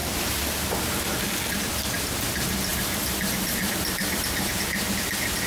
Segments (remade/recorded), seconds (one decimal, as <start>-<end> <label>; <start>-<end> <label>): 0.0-2.7 recorded; 2.7-4.5 remade; 4.5-5.5 recorded